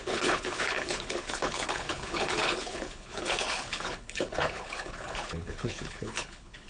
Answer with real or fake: fake